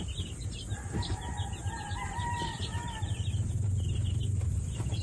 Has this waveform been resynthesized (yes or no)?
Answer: no